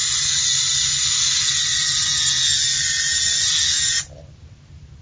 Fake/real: real